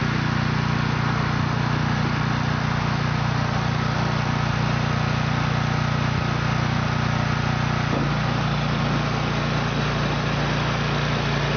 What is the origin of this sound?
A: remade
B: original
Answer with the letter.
B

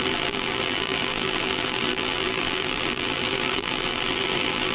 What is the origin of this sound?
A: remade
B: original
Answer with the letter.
A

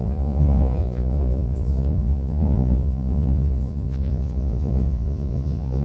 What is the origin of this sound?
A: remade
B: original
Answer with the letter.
A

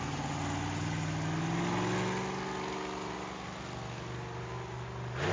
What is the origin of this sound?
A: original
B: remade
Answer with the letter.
A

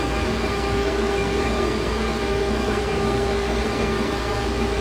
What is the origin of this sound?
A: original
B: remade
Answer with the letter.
B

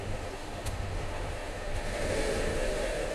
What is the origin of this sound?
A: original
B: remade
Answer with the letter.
B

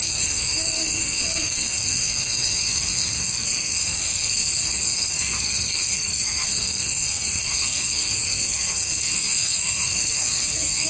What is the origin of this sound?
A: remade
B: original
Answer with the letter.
A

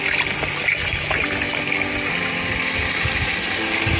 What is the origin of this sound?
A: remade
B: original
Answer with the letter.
B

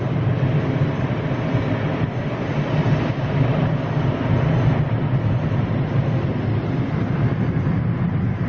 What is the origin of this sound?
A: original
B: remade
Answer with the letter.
A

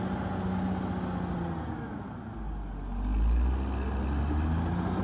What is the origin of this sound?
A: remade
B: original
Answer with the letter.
B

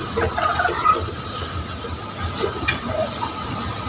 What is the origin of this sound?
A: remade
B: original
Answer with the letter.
B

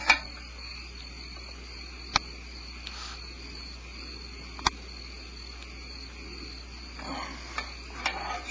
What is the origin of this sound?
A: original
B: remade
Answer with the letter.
A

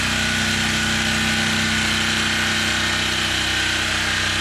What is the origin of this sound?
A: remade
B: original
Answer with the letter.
B